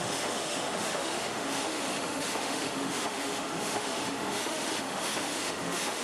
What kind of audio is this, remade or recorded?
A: remade